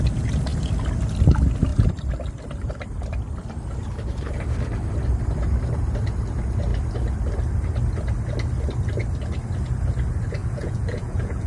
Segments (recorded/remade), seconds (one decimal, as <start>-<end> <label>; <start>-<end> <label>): 0.0-10.4 recorded; 10.4-11.5 remade